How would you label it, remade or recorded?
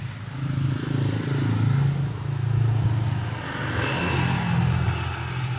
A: recorded